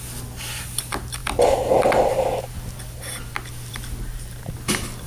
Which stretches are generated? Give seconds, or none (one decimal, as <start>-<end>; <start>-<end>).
none